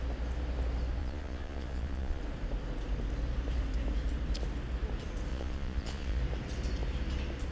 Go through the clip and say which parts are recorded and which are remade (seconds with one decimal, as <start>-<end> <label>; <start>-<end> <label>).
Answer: 0.0-1.0 recorded; 1.0-2.2 remade; 2.2-5.3 recorded; 5.3-6.2 remade; 6.2-7.5 recorded